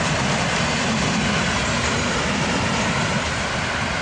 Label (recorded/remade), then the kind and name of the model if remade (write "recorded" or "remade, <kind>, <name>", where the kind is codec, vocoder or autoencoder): recorded